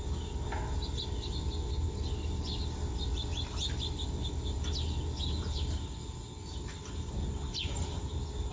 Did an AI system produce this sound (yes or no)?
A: no